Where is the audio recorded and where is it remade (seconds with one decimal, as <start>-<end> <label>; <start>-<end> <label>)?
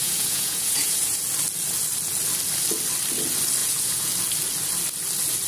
0.0-1.2 remade; 1.2-3.6 recorded; 3.6-4.1 remade; 4.1-5.5 recorded